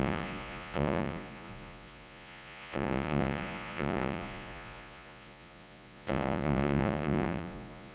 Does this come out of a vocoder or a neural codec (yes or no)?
yes